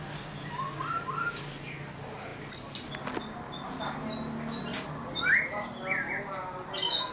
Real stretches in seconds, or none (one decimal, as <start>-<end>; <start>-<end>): 0.0-4.7; 5.5-7.1